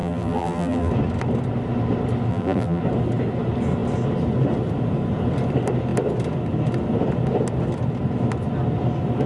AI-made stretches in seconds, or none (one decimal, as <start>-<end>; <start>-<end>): 0.0-0.9; 2.3-2.8